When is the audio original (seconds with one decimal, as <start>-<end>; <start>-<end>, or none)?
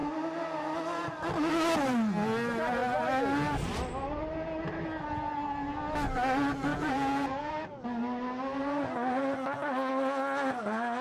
0.0-6.7; 7.5-11.0